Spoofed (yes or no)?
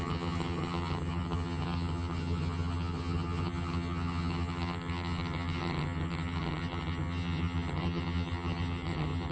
yes